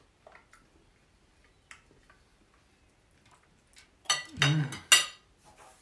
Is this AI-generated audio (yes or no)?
no